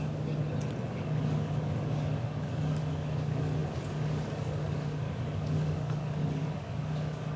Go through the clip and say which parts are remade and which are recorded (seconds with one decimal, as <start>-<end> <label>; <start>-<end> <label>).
0.0-0.4 remade; 0.4-0.9 recorded; 0.9-7.4 remade